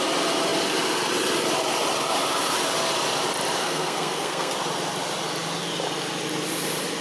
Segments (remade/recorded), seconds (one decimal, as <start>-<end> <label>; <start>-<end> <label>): 0.0-3.6 recorded; 3.6-4.5 remade; 4.5-7.0 recorded